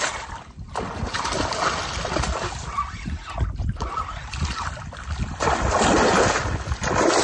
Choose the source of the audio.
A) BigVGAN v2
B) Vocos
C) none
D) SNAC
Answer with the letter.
C